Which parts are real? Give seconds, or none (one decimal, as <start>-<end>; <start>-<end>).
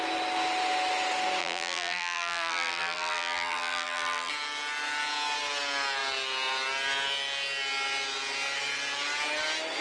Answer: 0.0-1.4; 4.3-9.8